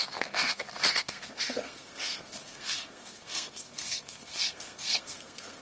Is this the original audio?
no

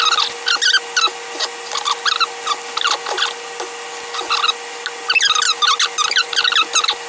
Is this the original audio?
yes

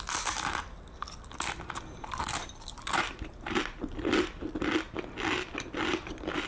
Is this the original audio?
yes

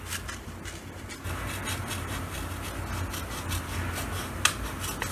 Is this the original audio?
yes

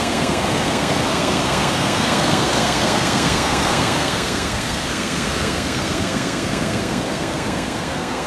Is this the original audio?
no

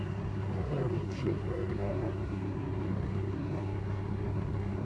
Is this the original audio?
no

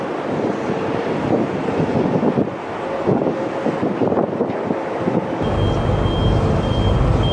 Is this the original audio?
yes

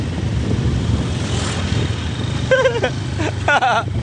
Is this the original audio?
yes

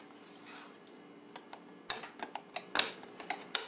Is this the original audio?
yes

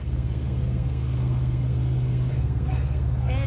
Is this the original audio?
no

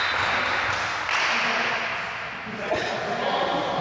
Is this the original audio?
yes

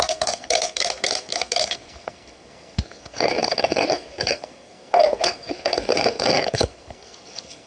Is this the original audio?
no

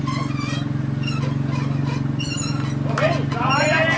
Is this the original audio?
yes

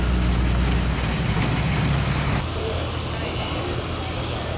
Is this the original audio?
yes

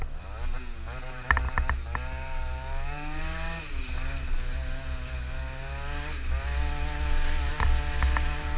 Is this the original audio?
yes